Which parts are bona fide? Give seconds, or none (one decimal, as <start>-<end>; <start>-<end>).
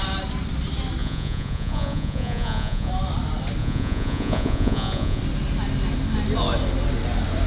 0.0-1.0; 2.9-3.6; 5.2-7.5